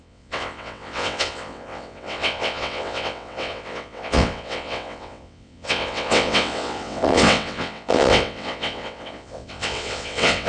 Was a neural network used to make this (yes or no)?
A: yes